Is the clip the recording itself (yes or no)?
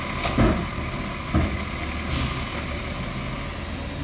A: yes